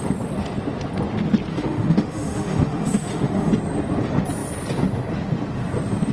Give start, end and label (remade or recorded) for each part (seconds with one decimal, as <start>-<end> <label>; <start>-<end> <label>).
0.0-1.5 recorded; 1.5-3.5 remade; 3.5-6.1 recorded